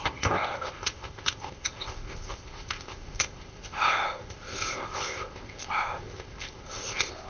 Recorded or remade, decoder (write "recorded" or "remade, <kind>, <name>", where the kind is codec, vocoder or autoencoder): remade, codec, ZipCodec